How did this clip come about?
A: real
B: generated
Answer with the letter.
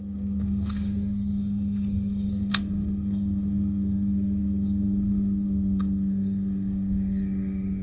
B